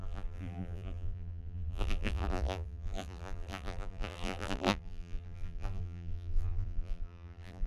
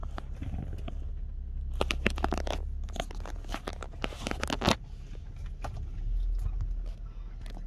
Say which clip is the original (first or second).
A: second